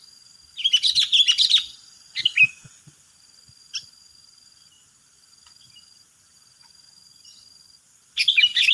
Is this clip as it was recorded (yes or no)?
yes